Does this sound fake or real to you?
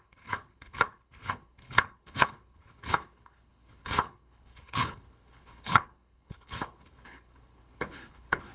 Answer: fake